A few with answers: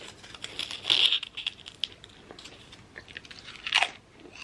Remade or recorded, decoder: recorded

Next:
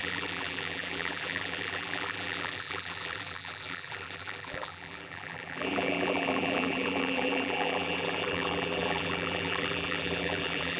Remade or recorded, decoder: remade, vocoder, BigVGAN v2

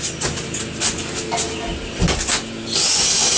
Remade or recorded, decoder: recorded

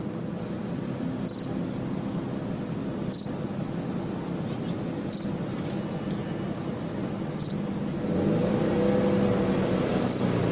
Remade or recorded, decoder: recorded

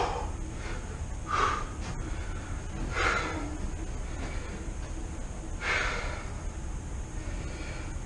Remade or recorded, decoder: recorded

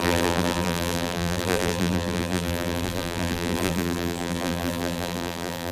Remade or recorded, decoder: remade, vocoder, BigVGAN v2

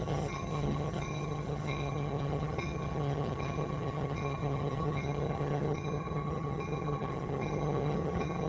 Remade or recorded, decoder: remade, vocoder, HiFi-GAN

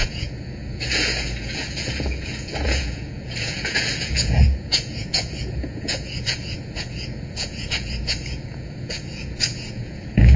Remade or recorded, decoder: remade, vocoder, Vocos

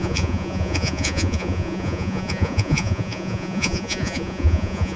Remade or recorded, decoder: remade, vocoder, Vocos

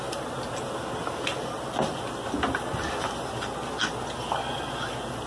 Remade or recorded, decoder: recorded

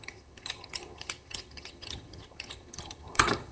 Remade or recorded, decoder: remade, vocoder, HiFi-GAN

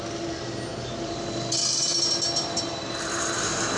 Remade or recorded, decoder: recorded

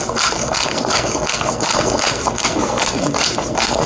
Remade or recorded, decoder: remade, codec, SNAC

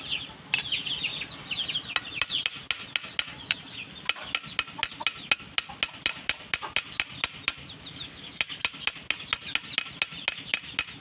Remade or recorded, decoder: recorded